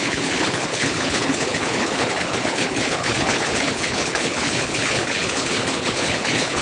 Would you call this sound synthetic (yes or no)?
yes